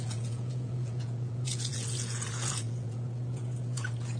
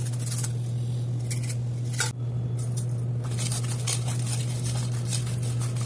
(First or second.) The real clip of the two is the second